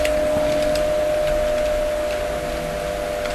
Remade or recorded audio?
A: recorded